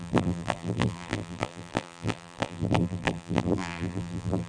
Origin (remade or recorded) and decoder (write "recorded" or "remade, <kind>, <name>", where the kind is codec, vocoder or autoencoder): remade, vocoder, BigVGAN v2